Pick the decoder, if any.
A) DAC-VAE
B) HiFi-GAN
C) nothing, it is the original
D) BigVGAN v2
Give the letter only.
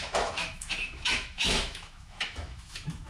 A